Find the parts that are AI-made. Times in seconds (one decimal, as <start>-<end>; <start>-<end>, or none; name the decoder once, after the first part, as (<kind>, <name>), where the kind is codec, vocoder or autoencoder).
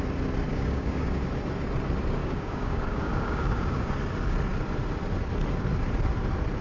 0.5-1.1 (codec, DAC); 2.2-3.9